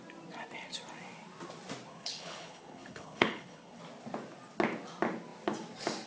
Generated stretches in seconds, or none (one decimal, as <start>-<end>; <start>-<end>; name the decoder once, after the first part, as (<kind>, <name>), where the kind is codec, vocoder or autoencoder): 1.9-3.8 (codec, HILCodec)